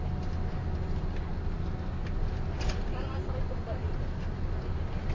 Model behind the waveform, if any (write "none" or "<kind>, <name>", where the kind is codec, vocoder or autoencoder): none